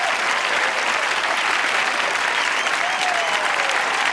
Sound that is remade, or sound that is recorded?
recorded